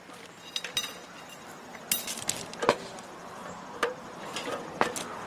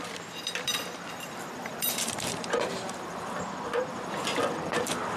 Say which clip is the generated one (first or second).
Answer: second